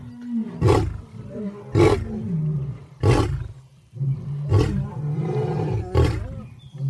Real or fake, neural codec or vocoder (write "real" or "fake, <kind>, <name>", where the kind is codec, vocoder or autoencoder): real